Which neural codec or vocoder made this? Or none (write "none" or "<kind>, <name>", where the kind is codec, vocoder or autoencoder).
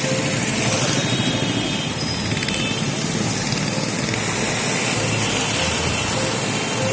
none